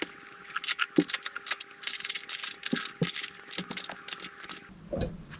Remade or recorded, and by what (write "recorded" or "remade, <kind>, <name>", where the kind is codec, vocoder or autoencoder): recorded